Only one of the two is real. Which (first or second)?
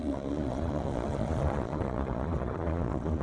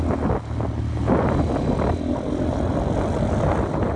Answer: second